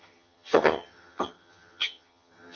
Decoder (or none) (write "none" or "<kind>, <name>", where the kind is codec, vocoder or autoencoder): vocoder, HiFi-GAN